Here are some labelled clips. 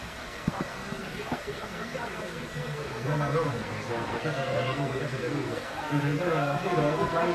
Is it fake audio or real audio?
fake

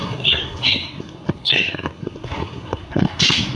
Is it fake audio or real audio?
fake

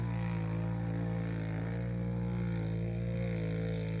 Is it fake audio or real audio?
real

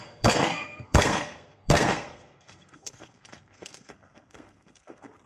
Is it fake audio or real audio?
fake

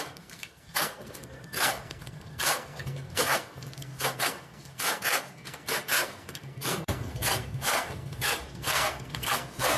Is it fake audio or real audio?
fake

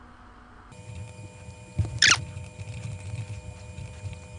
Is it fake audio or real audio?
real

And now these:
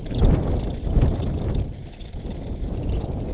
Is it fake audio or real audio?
real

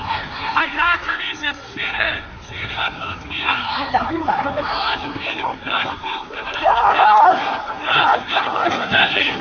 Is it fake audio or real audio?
fake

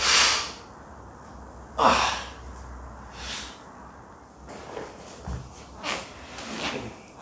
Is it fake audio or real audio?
real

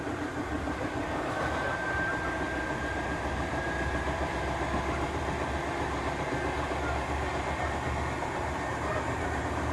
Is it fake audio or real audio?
real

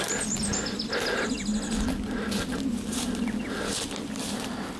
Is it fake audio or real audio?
real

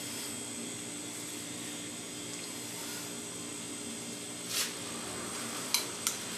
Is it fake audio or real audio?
real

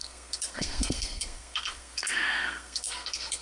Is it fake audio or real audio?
fake